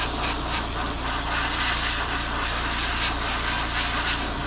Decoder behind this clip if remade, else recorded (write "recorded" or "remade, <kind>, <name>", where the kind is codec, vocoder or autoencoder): recorded